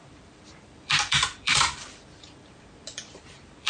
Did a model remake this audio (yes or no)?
yes